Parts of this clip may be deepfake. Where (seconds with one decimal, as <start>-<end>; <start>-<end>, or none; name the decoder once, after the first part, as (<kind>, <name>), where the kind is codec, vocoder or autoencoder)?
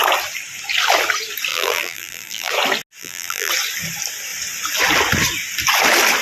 1.5-2.5 (vocoder, BigVGAN v2); 3.0-3.5